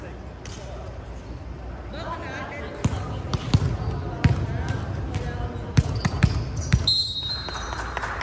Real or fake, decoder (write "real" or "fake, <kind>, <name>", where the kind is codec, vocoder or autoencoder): real